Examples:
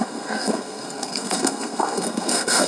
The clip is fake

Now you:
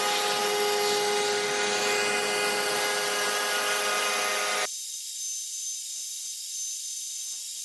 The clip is real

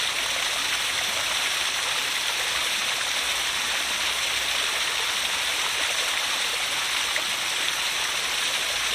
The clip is real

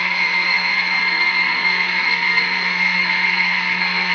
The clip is fake